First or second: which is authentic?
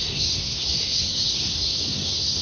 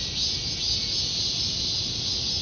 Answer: second